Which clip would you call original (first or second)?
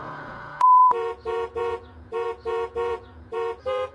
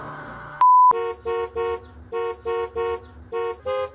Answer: second